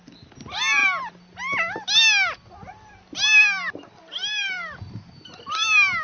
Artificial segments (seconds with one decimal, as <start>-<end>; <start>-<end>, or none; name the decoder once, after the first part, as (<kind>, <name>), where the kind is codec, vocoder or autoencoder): none